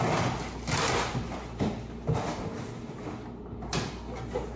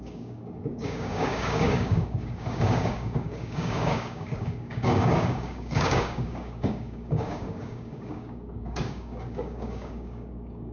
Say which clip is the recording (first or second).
first